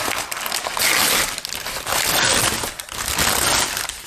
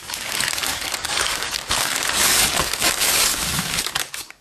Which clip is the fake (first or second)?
second